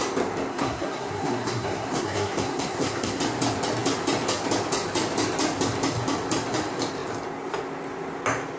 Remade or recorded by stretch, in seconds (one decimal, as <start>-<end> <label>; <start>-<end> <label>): 0.0-0.5 recorded; 0.5-3.2 remade; 3.2-8.6 recorded